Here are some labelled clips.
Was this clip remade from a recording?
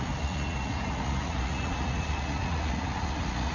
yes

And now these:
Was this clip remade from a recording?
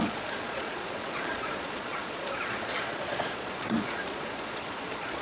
yes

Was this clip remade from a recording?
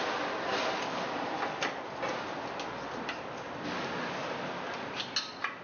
no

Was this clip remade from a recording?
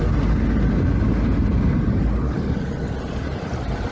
no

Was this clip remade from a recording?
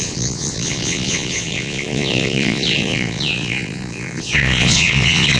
yes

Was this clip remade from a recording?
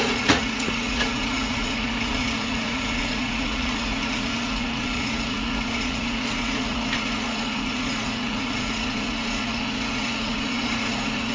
yes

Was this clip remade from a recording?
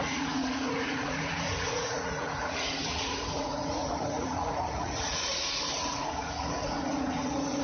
yes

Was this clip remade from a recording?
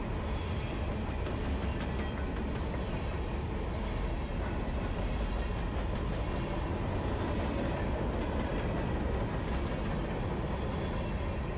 no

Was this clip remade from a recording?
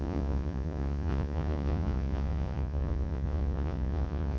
yes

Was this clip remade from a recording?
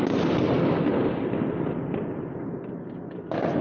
no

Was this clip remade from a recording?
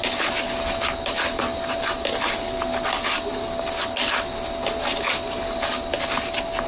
no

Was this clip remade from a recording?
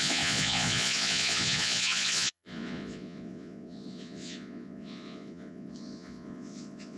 yes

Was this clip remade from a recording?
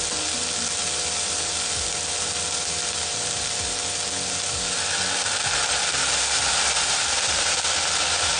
no